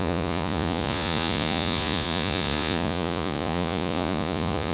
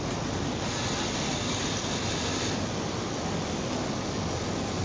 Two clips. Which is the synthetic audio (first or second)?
first